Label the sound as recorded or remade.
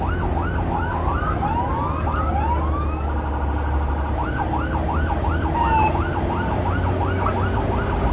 recorded